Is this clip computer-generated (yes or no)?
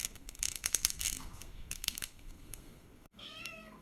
yes